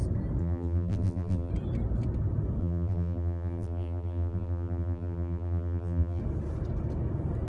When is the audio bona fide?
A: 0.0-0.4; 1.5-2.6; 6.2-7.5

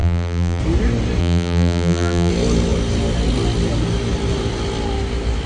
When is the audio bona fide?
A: 0.6-1.2; 2.3-5.5